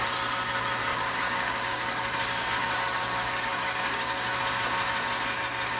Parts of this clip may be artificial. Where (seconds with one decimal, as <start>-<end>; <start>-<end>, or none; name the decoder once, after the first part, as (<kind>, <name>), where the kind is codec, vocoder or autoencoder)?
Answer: 0.9-4.4 (codec, DAC)